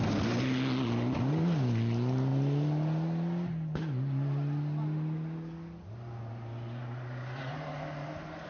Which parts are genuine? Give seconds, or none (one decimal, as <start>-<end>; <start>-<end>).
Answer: 0.0-8.5